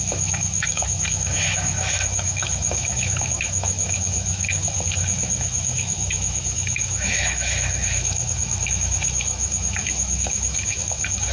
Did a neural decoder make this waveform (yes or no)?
yes